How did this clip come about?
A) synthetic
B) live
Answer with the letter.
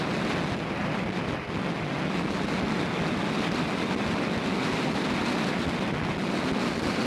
B